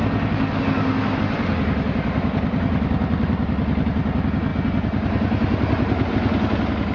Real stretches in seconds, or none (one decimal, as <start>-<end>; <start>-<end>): 0.0-6.9